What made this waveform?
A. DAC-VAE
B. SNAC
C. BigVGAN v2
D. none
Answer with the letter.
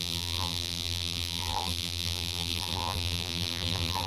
C